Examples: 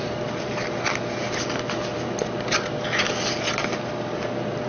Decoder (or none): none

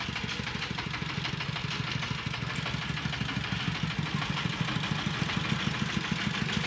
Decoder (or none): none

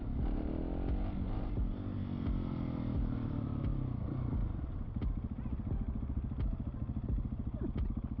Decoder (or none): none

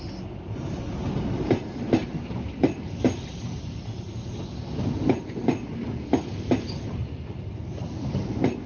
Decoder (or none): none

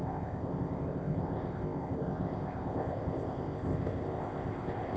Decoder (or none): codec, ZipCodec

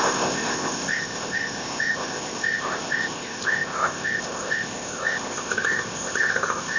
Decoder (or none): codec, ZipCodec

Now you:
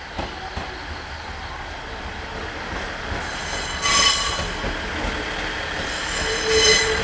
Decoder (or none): none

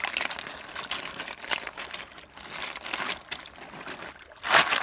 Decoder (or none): none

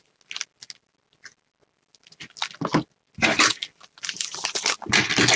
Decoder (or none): none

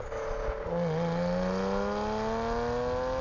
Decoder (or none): none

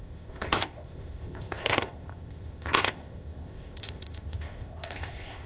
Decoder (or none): codec, ZipCodec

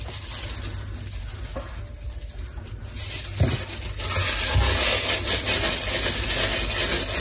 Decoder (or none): none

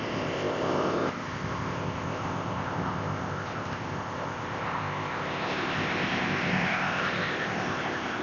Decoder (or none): codec, ZipCodec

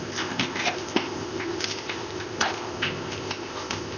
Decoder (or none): codec, ZipCodec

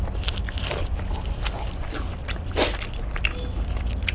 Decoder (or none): none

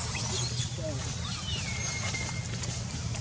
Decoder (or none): none